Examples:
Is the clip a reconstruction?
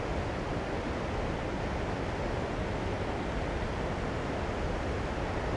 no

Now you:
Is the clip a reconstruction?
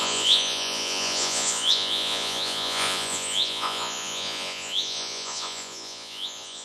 yes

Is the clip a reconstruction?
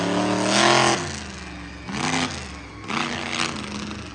no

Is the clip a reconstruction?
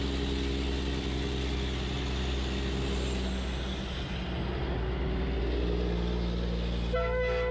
no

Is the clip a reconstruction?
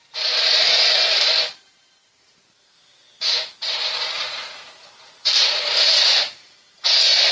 yes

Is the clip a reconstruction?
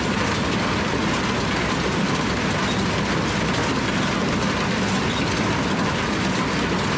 no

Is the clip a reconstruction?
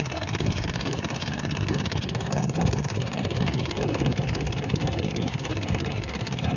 yes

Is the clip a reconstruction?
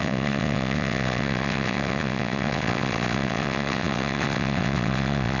yes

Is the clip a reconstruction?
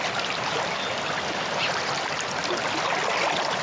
no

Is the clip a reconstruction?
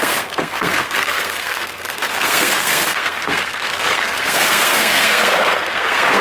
yes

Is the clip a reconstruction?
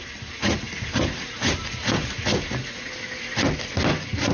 no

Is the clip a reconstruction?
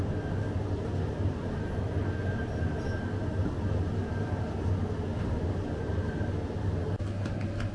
no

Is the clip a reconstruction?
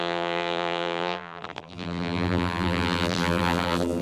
yes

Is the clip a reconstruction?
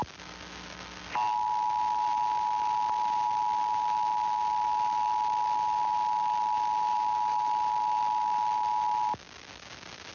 no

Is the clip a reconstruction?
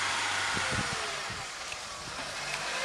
no